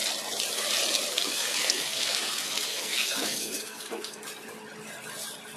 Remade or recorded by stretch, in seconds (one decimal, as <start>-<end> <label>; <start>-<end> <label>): 0.0-1.1 recorded; 1.1-4.2 remade; 4.2-5.6 recorded